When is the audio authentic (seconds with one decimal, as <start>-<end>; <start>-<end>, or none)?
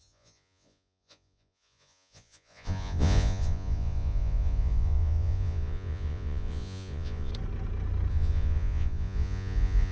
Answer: 7.3-8.1